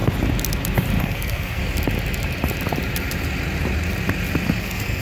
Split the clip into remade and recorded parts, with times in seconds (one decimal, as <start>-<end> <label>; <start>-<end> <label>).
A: 0.0-1.0 recorded; 1.0-1.6 remade; 1.6-4.6 recorded; 4.6-5.0 remade